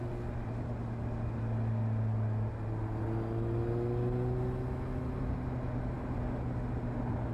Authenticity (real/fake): real